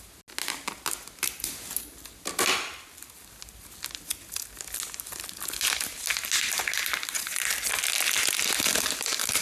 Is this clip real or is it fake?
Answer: real